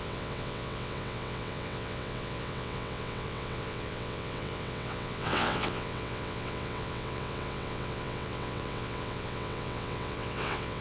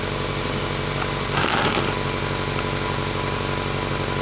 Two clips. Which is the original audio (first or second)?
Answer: second